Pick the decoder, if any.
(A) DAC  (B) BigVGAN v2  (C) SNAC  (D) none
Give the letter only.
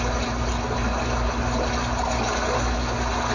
D